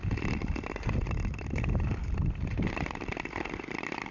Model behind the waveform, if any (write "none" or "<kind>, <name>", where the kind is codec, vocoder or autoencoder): none